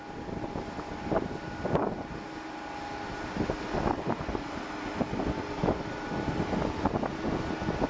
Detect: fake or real real